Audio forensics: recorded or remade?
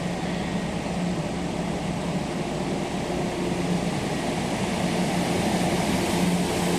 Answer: recorded